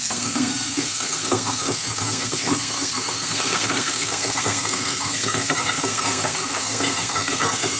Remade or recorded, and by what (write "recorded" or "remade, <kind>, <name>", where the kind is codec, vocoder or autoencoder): remade, codec, SNAC